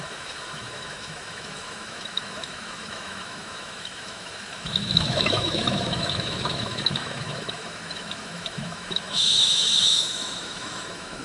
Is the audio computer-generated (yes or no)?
yes